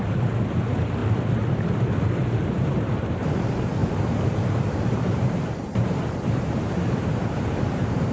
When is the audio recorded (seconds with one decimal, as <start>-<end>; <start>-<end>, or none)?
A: 1.0-2.0; 3.8-4.6